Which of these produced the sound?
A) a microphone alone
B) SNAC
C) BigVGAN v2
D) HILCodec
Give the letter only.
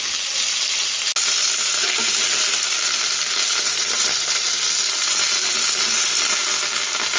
A